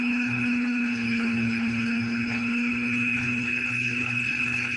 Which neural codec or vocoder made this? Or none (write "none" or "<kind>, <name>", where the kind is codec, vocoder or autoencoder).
codec, HILCodec